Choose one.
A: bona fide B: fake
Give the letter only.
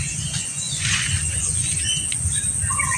B